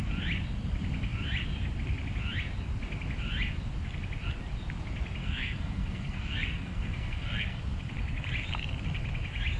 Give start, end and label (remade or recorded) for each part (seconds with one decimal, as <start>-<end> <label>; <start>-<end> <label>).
0.0-5.2 recorded; 5.2-7.6 remade; 7.6-9.6 recorded